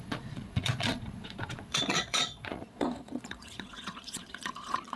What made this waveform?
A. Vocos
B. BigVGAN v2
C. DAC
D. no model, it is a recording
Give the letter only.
A